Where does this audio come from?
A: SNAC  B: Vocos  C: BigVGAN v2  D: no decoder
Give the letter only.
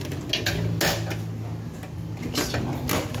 D